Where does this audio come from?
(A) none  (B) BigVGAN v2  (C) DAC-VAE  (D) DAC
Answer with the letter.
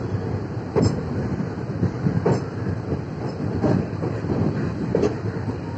B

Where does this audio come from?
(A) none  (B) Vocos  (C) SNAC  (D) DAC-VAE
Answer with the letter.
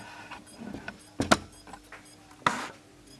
A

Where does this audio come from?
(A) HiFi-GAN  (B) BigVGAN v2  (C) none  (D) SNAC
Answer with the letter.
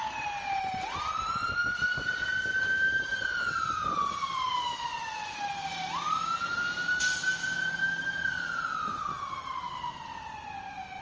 C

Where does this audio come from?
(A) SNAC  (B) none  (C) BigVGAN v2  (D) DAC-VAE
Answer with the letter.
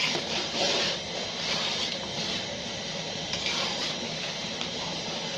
C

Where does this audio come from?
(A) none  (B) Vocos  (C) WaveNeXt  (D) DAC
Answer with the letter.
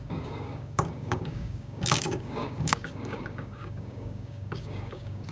D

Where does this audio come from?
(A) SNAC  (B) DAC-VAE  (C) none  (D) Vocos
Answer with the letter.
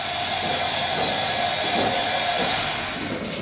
C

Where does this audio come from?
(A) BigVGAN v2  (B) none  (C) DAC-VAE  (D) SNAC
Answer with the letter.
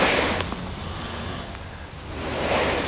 B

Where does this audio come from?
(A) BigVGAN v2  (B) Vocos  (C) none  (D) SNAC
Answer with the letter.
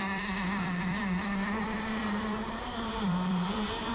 A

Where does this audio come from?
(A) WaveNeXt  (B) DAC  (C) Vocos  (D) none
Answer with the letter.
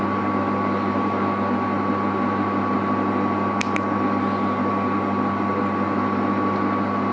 D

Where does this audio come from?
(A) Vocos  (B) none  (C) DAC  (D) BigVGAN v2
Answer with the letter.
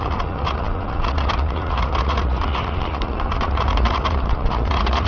A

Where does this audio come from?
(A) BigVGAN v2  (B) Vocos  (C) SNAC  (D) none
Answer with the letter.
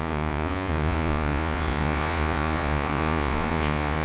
B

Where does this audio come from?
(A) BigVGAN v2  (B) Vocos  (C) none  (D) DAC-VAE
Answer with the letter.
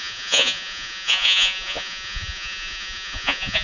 B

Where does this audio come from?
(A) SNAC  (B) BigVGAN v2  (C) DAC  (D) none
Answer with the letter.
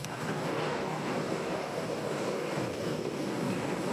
C